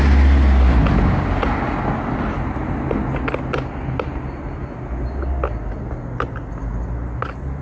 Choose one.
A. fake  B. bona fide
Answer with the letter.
B